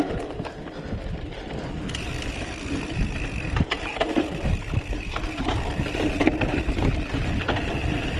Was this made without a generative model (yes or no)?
yes